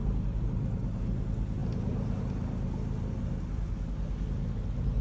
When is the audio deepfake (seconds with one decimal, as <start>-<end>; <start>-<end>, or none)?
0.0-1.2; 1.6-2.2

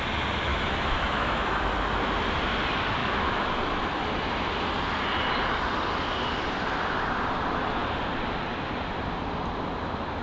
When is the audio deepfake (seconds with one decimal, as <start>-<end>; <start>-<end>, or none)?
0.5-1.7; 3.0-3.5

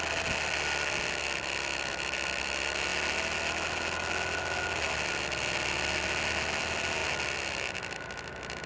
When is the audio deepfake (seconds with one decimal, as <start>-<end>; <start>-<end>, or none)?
none

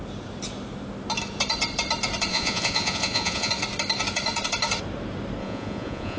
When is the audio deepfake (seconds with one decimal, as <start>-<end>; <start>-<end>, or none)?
2.3-3.5; 5.4-6.2